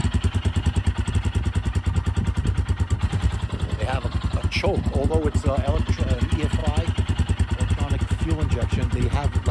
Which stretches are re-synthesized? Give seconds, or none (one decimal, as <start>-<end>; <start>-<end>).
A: none